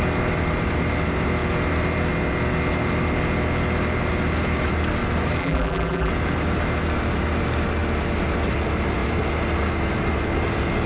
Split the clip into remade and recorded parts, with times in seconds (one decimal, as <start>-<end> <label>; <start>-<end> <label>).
0.0-5.4 recorded; 5.4-6.1 remade; 6.1-10.9 recorded